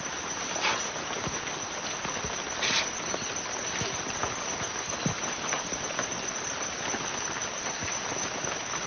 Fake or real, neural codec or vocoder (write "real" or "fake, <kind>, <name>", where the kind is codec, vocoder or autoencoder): real